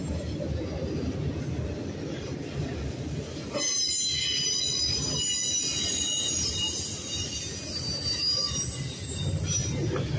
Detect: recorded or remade recorded